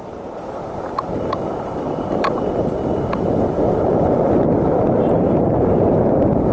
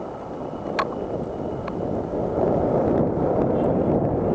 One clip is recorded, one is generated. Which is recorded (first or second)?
second